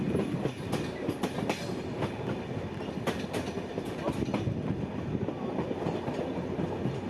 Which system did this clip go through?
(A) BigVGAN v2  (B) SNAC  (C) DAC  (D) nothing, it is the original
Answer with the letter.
D